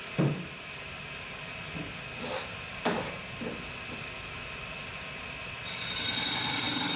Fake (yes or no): no